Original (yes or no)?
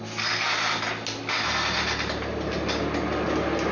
yes